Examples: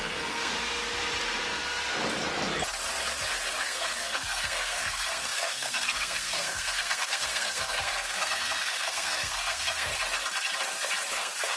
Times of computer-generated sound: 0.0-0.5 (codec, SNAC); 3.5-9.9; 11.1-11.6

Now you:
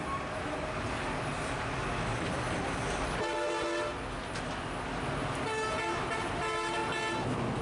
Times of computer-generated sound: none

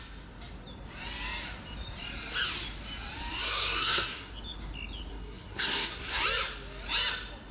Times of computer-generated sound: 3.4-4.3 (codec, SNAC); 5.1-6.2

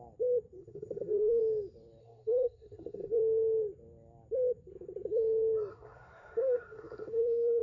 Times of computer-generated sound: 0.6-1.4 (codec, SNAC); 2.0-3.2; 5.7-7.6

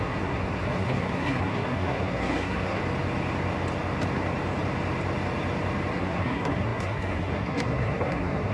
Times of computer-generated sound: 0.0-2.8 (codec, SNAC); 5.9-8.5

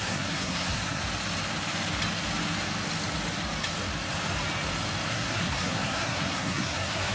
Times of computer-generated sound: 0.0-1.0 (codec, SNAC); 5.1-7.1

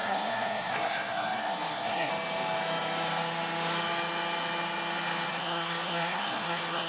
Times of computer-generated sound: 0.0-2.1 (codec, SNAC); 5.3-6.9